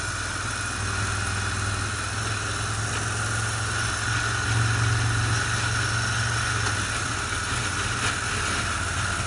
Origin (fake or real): real